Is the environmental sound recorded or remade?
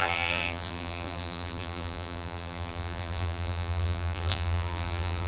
remade